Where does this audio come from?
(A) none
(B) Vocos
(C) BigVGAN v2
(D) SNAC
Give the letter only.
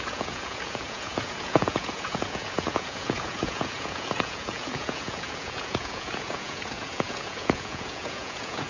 B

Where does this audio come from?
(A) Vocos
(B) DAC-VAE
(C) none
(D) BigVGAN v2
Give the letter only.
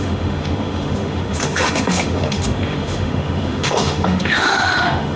B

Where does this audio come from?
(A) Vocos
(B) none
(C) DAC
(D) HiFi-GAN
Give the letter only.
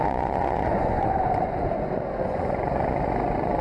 A